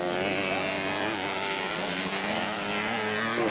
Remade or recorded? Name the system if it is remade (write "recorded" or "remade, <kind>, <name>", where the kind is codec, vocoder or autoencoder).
recorded